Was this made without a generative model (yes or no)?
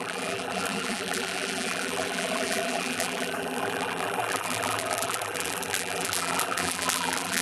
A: no